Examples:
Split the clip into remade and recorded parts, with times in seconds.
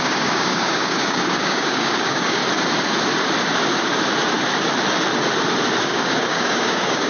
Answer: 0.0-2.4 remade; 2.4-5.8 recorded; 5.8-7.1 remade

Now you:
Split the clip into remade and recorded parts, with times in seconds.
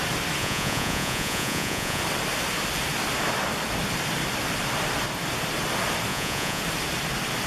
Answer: 0.0-0.4 recorded; 0.4-2.0 remade; 2.0-6.1 recorded; 6.1-6.6 remade; 6.6-7.5 recorded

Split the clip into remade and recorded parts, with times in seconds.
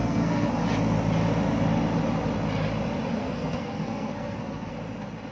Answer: 0.0-0.5 remade; 0.5-3.2 recorded; 3.2-4.7 remade; 4.7-5.3 recorded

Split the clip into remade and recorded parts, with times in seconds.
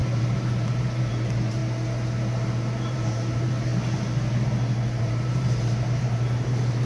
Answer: 0.0-1.6 remade; 1.6-2.5 recorded; 2.5-3.7 remade; 3.7-5.0 recorded; 5.0-6.9 remade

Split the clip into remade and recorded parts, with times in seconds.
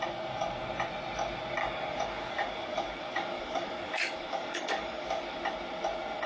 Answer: 0.0-1.6 recorded; 1.6-5.4 remade; 5.4-6.3 recorded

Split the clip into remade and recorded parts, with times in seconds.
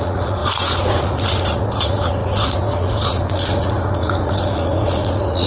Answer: 0.0-5.5 remade